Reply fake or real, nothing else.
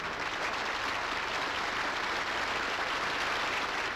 real